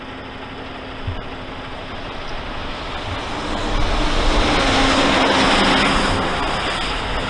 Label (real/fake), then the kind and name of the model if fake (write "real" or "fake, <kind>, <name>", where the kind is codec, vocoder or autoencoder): real